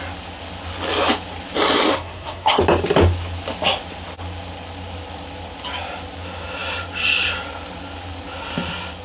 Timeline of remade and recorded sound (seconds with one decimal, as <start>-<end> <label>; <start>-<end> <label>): 0.0-1.9 recorded; 1.9-2.6 remade; 2.6-9.0 recorded